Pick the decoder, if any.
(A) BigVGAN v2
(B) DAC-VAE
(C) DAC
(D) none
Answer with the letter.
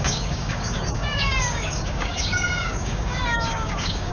C